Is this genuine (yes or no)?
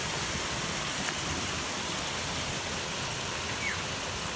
yes